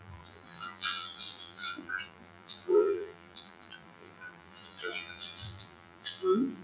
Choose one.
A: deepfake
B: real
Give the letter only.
A